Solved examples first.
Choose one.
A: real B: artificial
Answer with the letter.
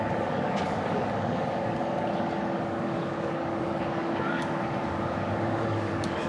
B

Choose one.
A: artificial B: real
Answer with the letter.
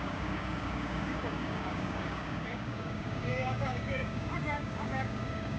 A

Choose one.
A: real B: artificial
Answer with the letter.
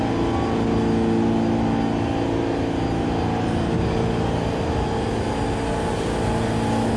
A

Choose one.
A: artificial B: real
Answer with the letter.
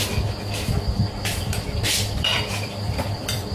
A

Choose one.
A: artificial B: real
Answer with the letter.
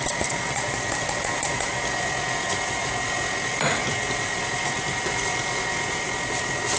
B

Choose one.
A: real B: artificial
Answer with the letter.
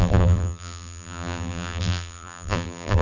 B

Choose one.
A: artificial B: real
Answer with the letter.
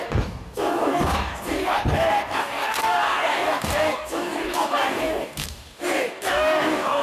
A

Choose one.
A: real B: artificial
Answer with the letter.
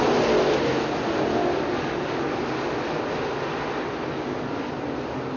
A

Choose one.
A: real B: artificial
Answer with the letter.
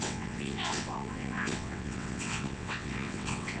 B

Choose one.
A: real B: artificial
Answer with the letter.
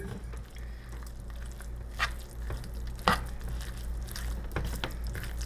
A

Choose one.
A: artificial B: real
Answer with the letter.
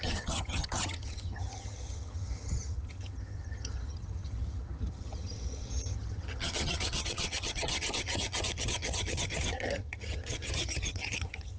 A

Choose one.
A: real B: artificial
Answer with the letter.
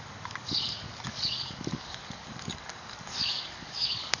B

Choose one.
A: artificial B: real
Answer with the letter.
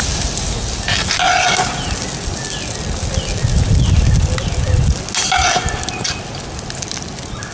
B